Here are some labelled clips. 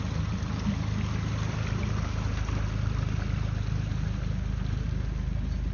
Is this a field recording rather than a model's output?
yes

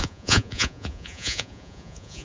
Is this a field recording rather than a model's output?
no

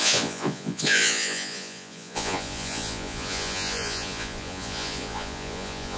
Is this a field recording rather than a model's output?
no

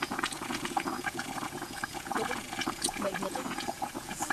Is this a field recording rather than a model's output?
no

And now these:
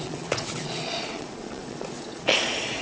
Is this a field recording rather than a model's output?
no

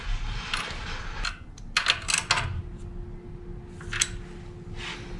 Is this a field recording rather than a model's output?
yes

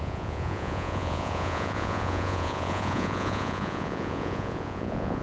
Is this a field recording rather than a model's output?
no